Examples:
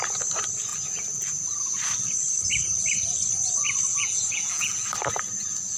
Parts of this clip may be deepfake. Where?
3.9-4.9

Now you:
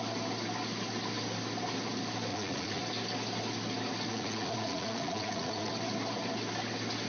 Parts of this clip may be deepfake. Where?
2.3-2.8; 4.1-5.7

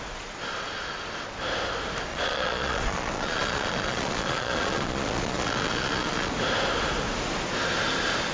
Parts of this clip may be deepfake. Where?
2.1-6.3

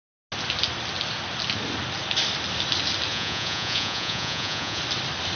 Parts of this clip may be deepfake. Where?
3.1-4.8

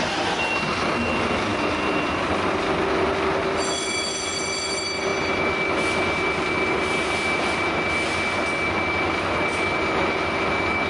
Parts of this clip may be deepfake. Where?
none

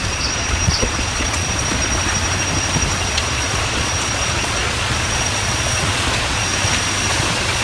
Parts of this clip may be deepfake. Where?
0.0-2.0; 3.1-6.5; 7.1-7.6

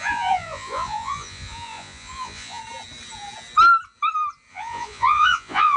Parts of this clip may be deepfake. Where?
0.0-2.6; 4.5-5.8